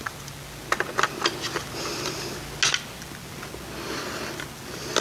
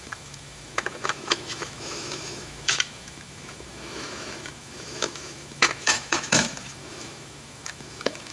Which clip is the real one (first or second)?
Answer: first